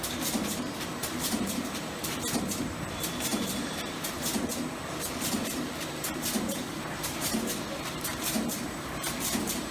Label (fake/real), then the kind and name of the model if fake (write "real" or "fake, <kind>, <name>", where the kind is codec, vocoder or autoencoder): fake, vocoder, BigVGAN v2